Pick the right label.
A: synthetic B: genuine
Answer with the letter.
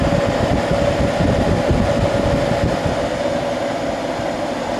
B